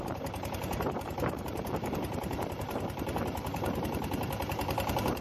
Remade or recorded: remade